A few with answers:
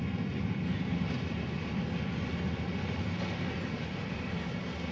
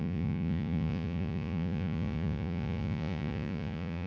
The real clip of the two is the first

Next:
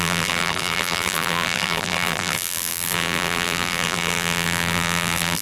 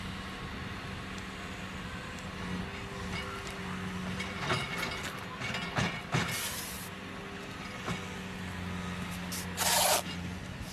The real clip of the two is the second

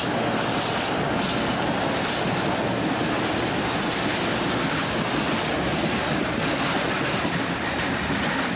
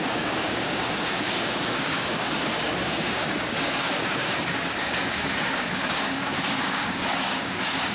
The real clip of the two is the first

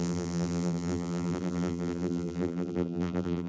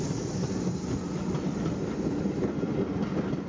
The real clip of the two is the second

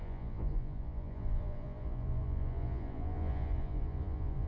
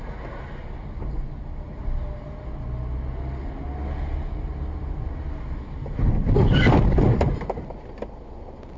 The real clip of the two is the second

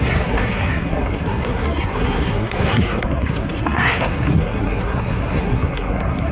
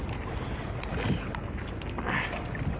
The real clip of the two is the second